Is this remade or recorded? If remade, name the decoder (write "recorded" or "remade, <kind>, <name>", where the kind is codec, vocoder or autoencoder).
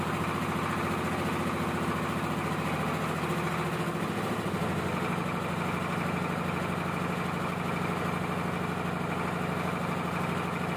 recorded